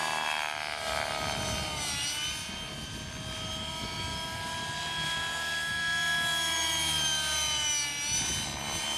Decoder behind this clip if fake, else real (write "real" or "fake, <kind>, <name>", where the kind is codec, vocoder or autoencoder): real